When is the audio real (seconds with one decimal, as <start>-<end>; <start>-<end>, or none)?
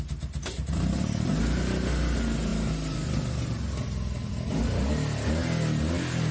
0.0-6.3